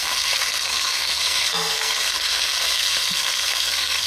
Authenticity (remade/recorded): remade